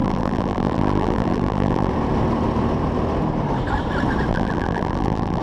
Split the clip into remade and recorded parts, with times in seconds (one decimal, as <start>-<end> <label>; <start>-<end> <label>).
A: 0.0-1.9 remade; 1.9-4.3 recorded; 4.3-5.4 remade